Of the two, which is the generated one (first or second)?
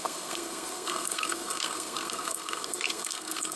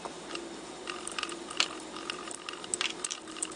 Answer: first